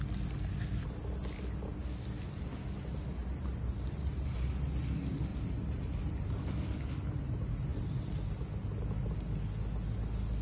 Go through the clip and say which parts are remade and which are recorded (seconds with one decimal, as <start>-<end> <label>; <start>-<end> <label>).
0.0-3.2 recorded; 3.2-4.5 remade; 4.5-5.3 recorded; 5.3-5.9 remade; 5.9-10.4 recorded